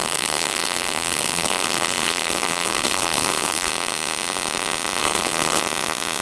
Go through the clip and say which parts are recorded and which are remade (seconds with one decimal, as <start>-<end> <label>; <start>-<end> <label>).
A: 0.0-3.7 remade; 3.7-5.0 recorded; 5.0-5.6 remade; 5.6-6.2 recorded